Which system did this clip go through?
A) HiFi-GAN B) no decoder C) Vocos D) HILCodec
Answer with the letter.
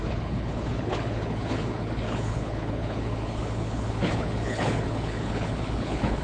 D